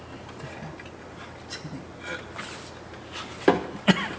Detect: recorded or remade recorded